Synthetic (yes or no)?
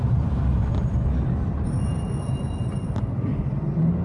no